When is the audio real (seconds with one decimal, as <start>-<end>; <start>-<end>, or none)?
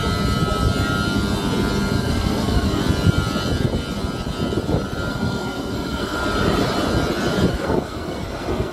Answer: 0.0-2.0; 2.8-5.1; 6.2-7.5